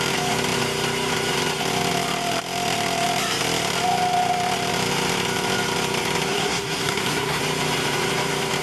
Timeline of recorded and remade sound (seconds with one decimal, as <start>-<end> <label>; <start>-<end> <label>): 0.0-6.3 recorded; 6.3-7.4 remade; 7.4-8.6 recorded